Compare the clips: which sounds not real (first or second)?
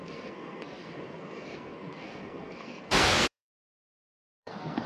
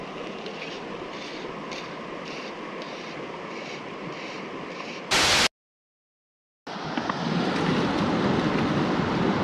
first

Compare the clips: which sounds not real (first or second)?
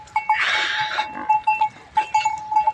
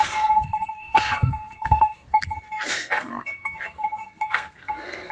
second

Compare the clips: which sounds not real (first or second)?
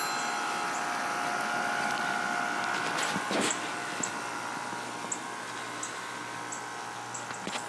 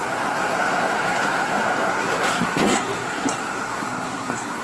second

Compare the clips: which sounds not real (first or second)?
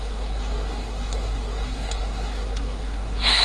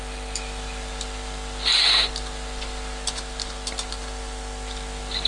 first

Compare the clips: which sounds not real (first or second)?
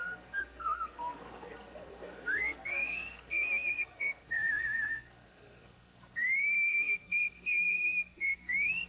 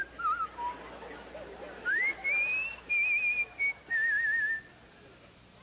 first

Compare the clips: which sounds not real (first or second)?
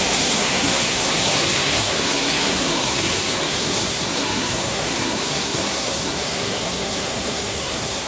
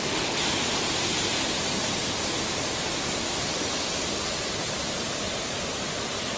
first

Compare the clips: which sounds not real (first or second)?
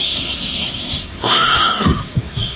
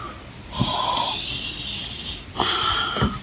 first